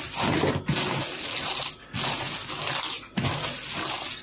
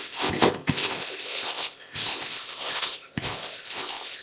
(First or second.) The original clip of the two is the first